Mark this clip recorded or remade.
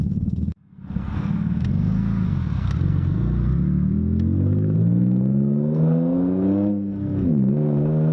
remade